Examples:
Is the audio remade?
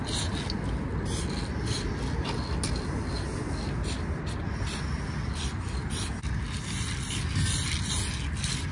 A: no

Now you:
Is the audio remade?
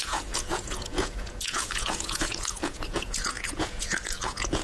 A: yes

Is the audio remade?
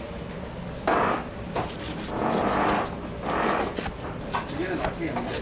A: no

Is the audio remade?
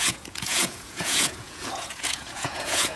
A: yes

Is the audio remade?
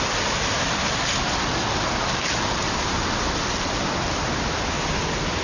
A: no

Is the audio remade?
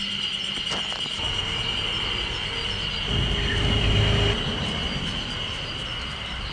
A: no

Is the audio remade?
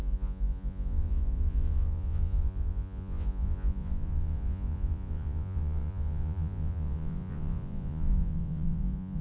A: yes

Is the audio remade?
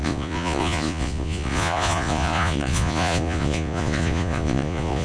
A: yes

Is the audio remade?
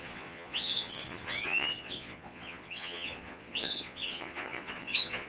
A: yes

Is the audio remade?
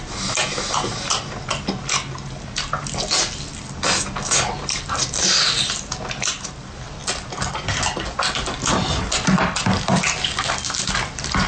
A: no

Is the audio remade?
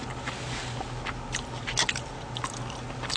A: no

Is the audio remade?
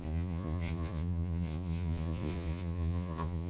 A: yes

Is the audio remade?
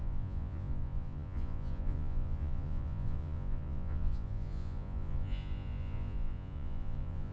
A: yes